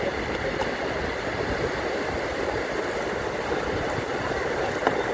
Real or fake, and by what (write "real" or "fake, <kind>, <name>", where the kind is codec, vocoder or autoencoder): real